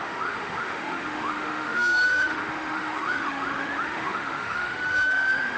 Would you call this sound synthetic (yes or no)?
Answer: yes